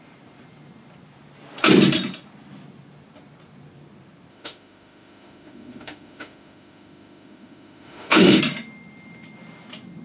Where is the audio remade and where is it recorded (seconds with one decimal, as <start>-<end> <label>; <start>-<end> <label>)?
0.0-4.3 recorded; 4.3-8.4 remade; 8.4-10.0 recorded